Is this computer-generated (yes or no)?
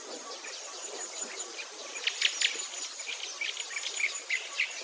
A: no